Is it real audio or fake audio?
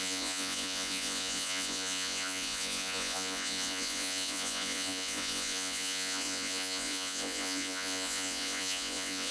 fake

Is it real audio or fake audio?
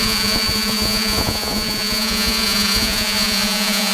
fake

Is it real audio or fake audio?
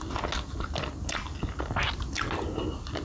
real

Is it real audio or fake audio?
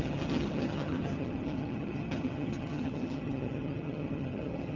fake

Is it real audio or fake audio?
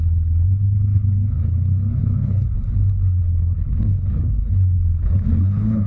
fake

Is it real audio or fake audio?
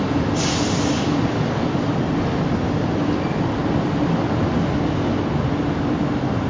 real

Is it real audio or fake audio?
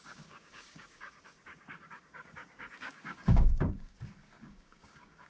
fake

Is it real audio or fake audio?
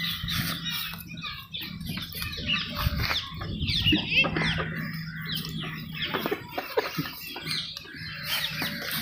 real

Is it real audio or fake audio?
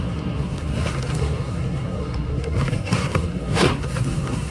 fake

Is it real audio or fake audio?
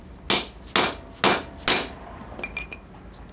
real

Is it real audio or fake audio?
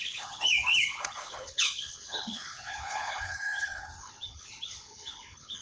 fake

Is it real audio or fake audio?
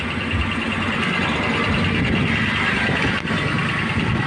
real